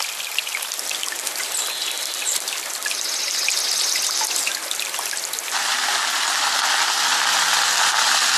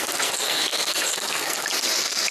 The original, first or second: first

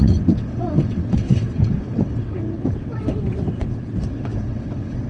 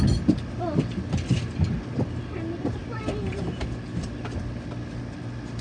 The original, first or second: second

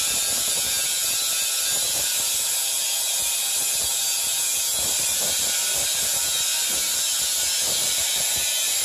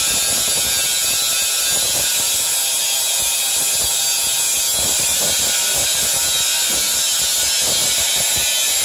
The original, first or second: second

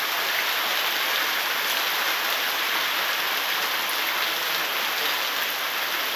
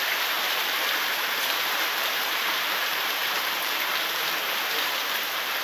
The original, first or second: first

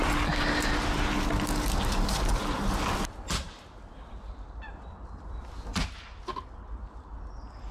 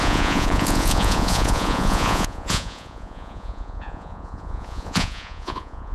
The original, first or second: first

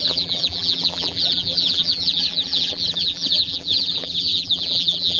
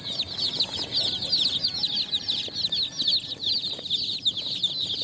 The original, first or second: second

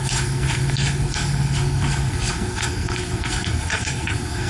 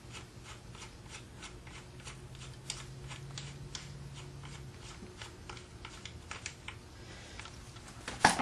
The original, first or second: second